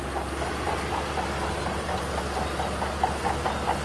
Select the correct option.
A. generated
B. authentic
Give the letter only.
B